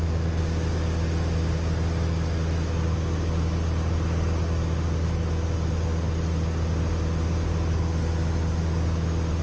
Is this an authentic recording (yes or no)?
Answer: yes